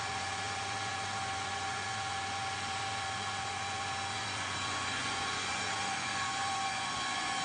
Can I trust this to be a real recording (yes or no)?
no